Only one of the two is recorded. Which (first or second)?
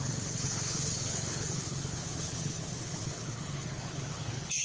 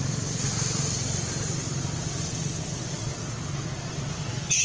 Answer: second